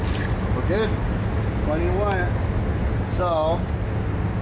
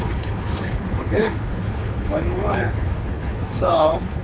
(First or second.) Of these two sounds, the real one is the first